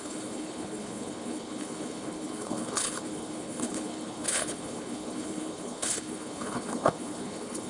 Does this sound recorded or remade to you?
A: remade